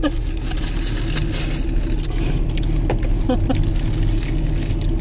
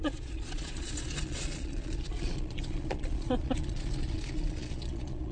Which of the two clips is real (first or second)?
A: first